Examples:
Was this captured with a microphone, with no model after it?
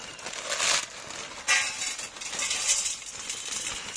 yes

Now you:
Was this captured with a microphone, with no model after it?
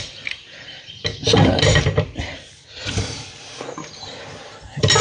yes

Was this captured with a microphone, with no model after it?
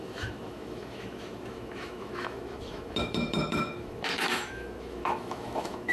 no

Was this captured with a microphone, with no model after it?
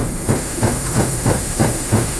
no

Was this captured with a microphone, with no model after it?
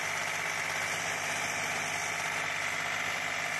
yes